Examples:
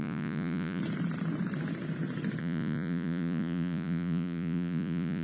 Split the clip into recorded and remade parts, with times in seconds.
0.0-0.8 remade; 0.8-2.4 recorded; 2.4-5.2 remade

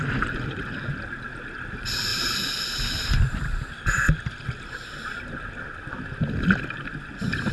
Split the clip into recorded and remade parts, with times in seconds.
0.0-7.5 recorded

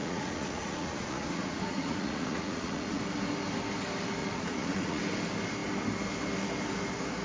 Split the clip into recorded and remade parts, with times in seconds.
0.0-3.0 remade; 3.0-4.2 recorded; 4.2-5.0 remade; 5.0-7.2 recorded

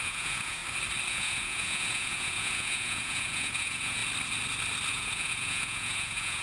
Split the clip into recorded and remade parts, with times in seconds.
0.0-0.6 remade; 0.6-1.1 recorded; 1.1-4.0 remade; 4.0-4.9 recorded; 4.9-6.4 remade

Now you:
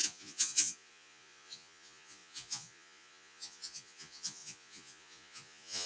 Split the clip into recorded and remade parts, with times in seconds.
0.0-5.9 remade

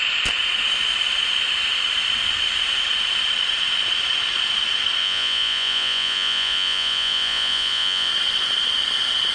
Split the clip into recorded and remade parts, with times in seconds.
0.0-5.0 recorded; 5.0-8.1 remade; 8.1-9.3 recorded

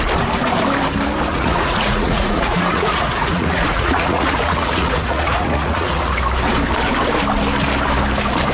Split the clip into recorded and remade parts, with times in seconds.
0.0-1.3 recorded; 1.3-6.2 remade; 6.2-8.5 recorded

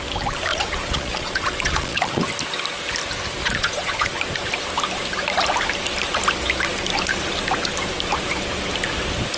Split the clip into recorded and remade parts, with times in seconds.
0.0-0.5 recorded; 0.5-2.2 remade; 2.2-3.4 recorded; 3.4-4.2 remade; 4.2-9.4 recorded